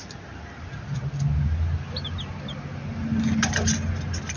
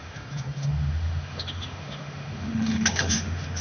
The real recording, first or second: first